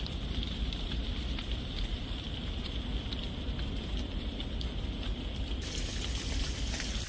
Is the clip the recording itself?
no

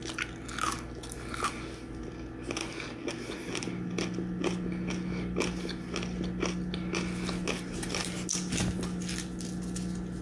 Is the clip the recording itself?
yes